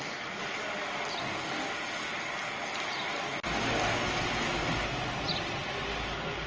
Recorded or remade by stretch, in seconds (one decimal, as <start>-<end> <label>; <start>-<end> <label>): 0.0-1.2 recorded; 1.2-1.7 remade; 1.7-6.5 recorded